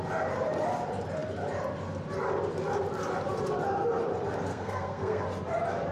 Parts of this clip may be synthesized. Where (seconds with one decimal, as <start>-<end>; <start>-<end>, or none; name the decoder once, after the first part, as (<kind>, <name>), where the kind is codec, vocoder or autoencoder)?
4.5-5.2 (codec, SNAC)